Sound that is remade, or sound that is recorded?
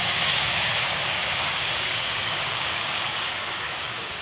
remade